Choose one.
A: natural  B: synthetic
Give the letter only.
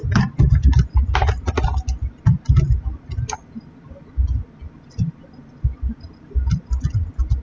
A